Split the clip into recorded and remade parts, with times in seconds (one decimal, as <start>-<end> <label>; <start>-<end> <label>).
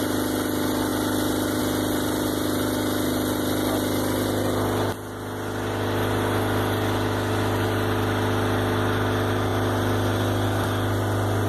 0.0-11.5 recorded